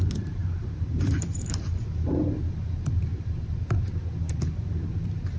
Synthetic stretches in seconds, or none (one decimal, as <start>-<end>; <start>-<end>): 0.0-5.4